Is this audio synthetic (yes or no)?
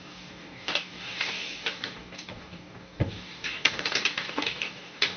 yes